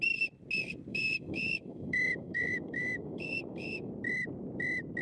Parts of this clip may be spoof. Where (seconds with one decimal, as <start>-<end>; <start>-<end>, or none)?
0.9-3.9